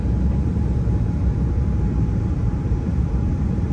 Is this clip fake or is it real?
fake